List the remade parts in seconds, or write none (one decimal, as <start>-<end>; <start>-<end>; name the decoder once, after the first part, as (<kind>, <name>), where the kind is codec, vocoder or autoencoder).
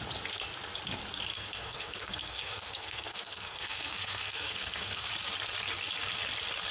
1.3-5.1 (codec, SNAC)